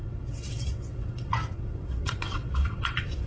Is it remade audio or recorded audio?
remade